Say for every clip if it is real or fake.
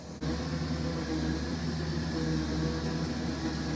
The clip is real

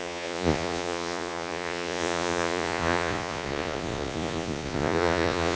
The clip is fake